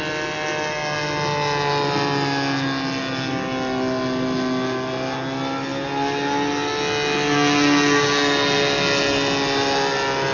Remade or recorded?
recorded